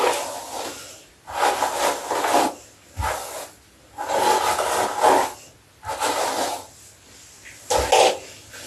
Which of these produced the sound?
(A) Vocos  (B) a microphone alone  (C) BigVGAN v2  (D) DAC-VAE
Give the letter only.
B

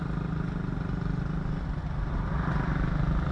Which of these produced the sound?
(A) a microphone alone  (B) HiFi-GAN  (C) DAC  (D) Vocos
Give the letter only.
A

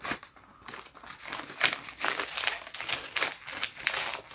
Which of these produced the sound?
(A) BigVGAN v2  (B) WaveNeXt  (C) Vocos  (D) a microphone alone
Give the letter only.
D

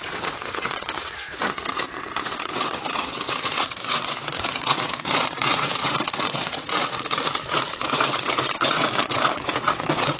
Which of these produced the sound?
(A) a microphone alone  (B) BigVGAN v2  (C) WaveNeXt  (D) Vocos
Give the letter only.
C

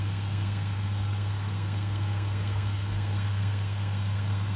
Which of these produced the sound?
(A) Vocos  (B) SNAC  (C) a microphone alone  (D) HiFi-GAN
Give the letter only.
B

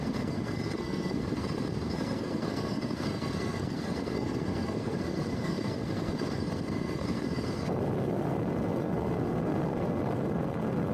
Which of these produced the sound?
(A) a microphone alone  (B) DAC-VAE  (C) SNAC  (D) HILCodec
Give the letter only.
C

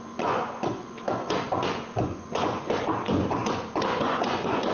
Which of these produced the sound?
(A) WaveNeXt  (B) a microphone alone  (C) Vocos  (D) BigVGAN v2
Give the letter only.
C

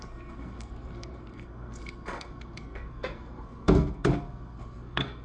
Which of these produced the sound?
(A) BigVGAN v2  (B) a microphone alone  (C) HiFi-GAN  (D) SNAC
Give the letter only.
D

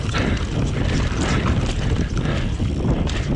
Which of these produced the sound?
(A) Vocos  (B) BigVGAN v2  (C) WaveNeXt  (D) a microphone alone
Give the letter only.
D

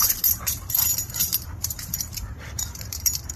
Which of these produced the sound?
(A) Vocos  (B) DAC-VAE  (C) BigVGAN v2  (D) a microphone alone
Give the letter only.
C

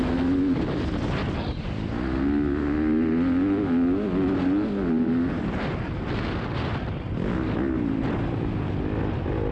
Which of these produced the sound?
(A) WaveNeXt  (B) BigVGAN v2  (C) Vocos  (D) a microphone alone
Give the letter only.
D